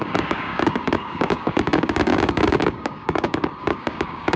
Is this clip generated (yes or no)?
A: yes